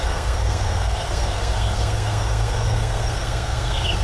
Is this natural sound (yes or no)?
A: no